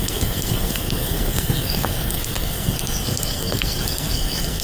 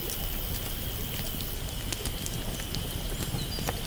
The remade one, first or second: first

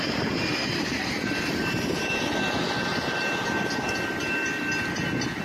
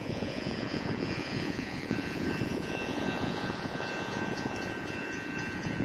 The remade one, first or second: second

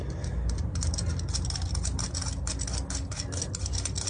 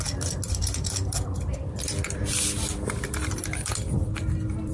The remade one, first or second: second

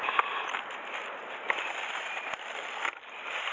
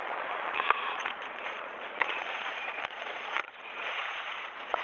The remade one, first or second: second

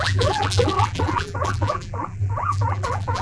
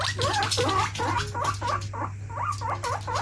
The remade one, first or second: first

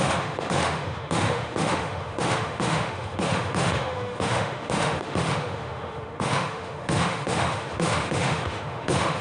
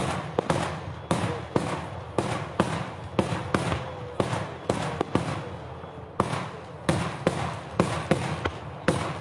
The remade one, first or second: first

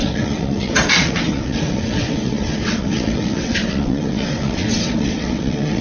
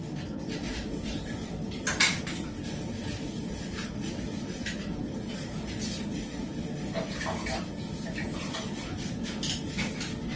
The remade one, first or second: first